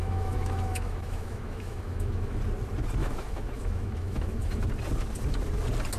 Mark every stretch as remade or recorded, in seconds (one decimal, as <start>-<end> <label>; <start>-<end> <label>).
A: 0.0-2.4 remade; 2.4-3.0 recorded; 3.0-4.6 remade; 4.6-6.0 recorded